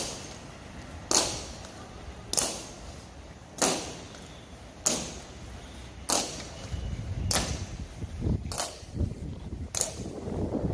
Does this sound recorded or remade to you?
recorded